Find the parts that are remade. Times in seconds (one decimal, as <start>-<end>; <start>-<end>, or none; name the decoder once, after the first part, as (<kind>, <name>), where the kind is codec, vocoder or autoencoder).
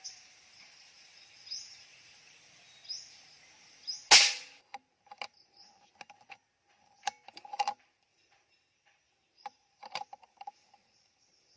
0.0-4.0 (vocoder, BigVGAN v2); 6.8-11.6